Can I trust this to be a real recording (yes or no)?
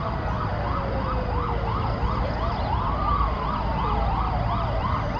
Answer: yes